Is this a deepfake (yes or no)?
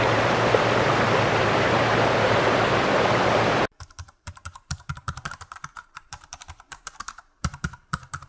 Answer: yes